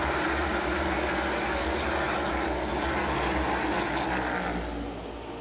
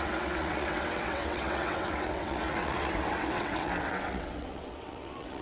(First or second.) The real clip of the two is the first